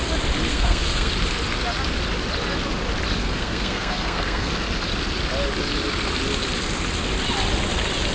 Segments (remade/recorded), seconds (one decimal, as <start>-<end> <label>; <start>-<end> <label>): 0.0-0.5 recorded; 0.5-1.1 remade; 1.1-3.2 recorded; 3.2-4.5 remade; 4.5-8.1 recorded